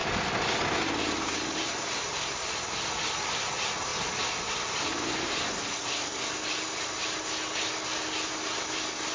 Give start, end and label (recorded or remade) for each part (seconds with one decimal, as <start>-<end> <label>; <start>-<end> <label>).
0.0-9.1 recorded